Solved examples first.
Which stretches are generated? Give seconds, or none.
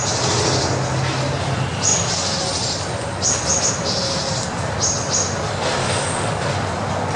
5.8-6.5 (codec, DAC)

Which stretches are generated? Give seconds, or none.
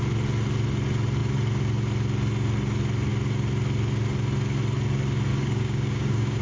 5.3-6.4 (codec, DAC)